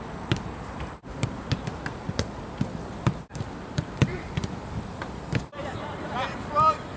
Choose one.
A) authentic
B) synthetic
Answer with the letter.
B